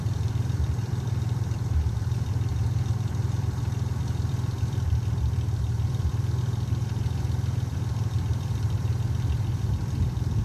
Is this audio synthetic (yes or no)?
yes